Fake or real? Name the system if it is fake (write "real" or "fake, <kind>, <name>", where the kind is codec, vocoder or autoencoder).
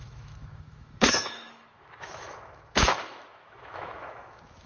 fake, autoencoder, DAC-VAE